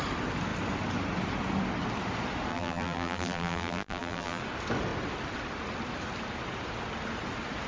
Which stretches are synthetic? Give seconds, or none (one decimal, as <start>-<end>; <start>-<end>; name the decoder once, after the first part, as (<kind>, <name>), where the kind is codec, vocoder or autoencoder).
2.5-4.4 (vocoder, BigVGAN v2)